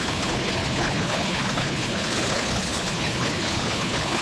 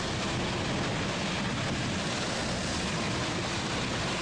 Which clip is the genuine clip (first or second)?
second